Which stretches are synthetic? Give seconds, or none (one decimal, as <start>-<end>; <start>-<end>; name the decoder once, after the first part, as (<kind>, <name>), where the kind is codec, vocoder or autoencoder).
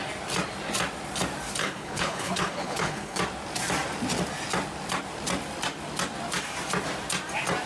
1.6-3.2 (codec, HILCodec)